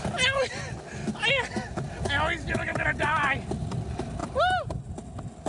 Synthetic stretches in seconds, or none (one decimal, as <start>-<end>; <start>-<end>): none